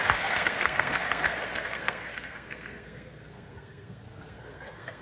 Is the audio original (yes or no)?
no